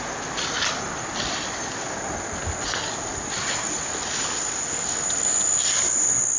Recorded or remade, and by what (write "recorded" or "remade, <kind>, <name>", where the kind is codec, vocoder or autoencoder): recorded